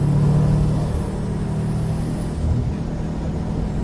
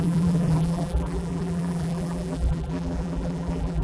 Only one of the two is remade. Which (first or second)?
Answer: second